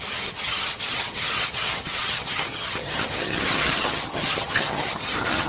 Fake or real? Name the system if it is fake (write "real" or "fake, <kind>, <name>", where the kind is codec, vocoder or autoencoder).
fake, vocoder, HiFi-GAN